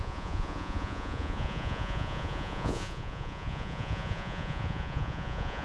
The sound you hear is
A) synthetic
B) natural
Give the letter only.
A